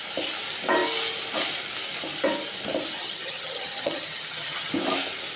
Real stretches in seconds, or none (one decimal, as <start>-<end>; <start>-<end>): 0.0-3.0; 4.7-5.4